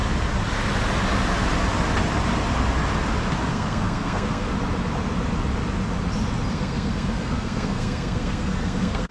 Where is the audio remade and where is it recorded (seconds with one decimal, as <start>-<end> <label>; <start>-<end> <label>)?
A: 0.0-3.5 recorded; 3.5-4.5 remade; 4.5-6.5 recorded; 6.5-9.1 remade